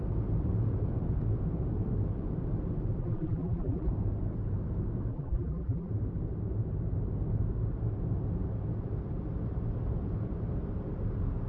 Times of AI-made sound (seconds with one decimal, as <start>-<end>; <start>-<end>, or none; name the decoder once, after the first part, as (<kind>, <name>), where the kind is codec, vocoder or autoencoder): 3.0-3.9 (vocoder, BigVGAN v2); 5.1-5.9